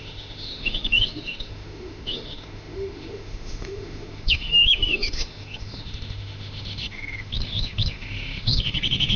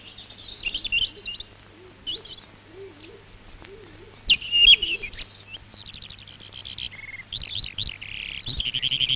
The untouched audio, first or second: second